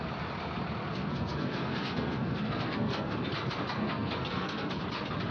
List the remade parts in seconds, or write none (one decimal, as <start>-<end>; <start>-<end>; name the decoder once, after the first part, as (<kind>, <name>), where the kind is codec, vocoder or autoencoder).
1.0-3.1 (codec, SNAC); 3.8-4.8